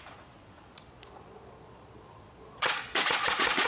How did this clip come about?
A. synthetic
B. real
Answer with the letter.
A